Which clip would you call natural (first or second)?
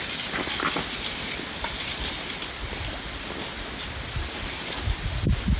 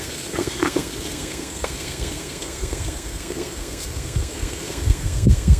first